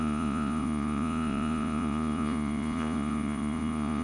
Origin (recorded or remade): remade